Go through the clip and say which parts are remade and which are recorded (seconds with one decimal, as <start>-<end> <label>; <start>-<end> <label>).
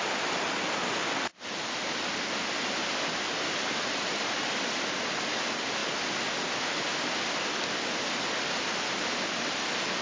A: 0.0-10.0 recorded